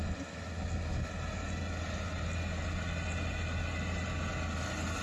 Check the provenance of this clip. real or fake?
real